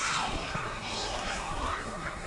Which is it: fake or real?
fake